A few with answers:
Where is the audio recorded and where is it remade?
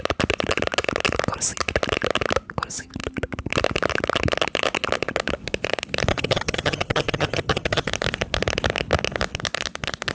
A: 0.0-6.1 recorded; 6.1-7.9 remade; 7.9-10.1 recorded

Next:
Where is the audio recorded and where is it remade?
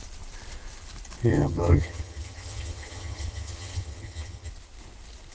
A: 0.0-1.3 recorded; 1.3-4.5 remade; 4.5-5.3 recorded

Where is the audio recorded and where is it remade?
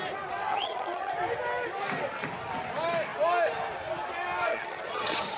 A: 0.0-0.5 recorded; 0.5-1.1 remade; 1.1-4.5 recorded; 4.5-5.4 remade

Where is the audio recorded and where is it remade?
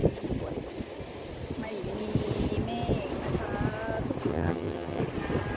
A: 0.0-4.3 recorded; 4.3-5.0 remade; 5.0-5.6 recorded